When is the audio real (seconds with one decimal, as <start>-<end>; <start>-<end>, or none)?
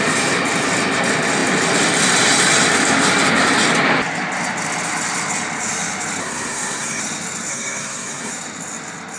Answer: 0.0-6.2; 7.0-7.5; 8.3-9.2